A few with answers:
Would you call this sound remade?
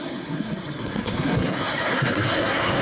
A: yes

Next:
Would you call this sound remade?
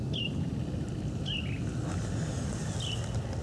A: no